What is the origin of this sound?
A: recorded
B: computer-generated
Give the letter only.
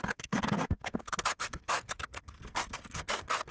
B